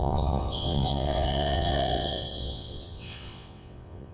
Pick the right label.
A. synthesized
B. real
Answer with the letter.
A